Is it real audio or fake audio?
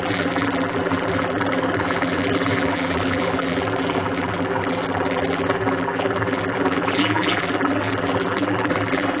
fake